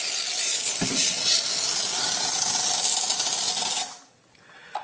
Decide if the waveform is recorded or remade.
recorded